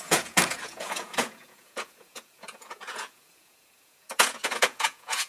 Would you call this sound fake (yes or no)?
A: yes